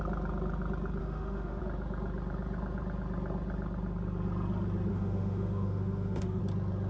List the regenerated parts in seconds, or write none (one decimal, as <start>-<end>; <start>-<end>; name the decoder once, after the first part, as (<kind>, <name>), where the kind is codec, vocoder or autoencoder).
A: 1.0-1.6 (autoencoder, DAC-VAE); 4.9-6.4